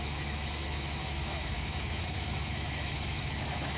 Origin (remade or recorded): remade